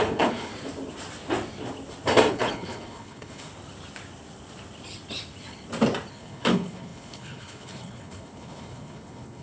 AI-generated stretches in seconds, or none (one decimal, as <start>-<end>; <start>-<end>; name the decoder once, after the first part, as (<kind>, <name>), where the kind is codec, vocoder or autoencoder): 0.0-0.5 (codec, HILCodec); 2.3-3.5; 6.1-9.4